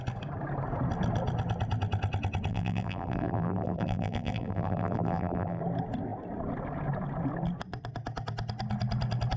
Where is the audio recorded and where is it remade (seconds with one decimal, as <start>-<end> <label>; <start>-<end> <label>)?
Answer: 0.0-2.5 recorded; 2.5-5.6 remade; 5.6-9.4 recorded